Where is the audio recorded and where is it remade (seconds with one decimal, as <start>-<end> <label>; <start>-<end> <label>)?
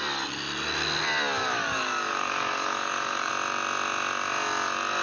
0.0-1.4 recorded; 1.4-3.3 remade; 3.3-5.0 recorded